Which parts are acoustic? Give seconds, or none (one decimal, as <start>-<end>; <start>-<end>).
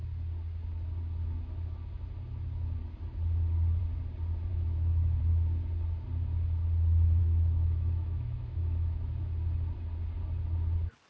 0.0-4.5; 5.2-7.2; 9.1-11.1